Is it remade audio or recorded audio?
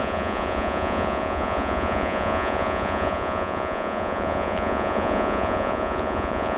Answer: remade